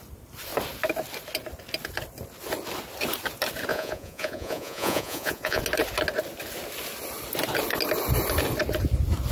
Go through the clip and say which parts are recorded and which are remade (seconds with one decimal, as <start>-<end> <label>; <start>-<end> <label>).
0.0-3.7 recorded; 3.7-5.6 remade; 5.6-9.3 recorded